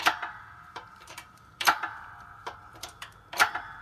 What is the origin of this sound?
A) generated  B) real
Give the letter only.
A